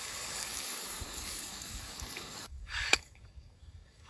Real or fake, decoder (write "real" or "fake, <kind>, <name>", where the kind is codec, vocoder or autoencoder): fake, codec, DAC